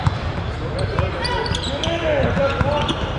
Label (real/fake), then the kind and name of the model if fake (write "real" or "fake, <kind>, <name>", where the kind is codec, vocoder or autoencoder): real